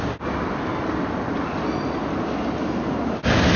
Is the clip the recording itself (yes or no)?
yes